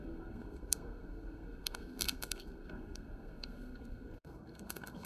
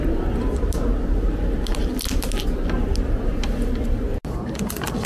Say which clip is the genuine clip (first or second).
second